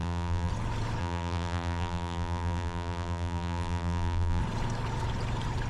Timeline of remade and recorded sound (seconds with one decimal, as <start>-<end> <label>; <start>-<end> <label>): 0.0-0.5 remade; 0.5-1.0 recorded; 1.0-4.4 remade; 4.4-5.7 recorded